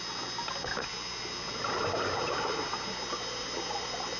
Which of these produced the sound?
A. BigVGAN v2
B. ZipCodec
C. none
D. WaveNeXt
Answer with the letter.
C